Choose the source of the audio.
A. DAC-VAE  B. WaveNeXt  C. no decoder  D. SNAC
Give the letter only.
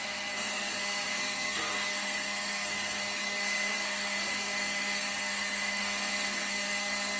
D